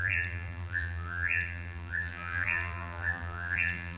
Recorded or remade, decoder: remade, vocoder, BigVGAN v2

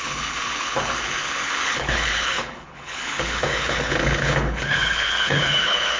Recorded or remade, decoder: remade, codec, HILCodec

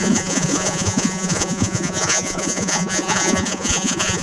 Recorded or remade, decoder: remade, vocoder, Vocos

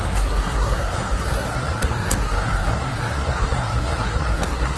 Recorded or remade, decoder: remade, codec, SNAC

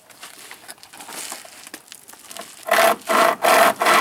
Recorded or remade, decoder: recorded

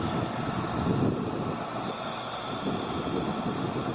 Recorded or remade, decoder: recorded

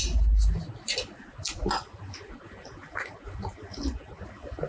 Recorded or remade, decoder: recorded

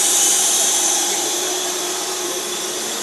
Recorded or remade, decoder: remade, vocoder, BigVGAN v2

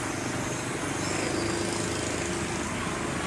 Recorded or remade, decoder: recorded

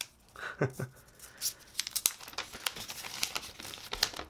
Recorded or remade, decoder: recorded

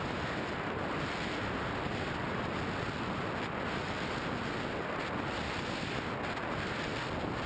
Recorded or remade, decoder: recorded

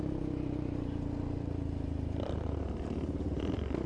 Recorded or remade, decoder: remade, vocoder, BigVGAN v2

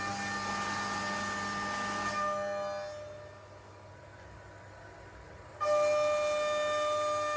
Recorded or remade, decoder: recorded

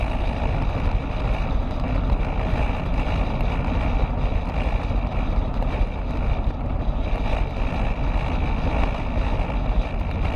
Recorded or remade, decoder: recorded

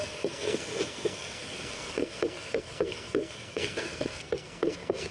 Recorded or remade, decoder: remade, codec, SNAC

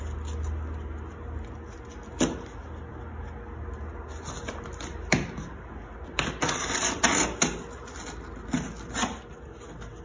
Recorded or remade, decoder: recorded